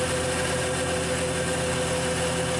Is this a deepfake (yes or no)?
no